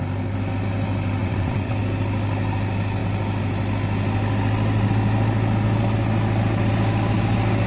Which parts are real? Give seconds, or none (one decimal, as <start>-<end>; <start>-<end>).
0.0-1.2; 1.8-7.7